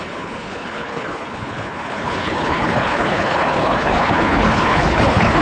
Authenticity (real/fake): fake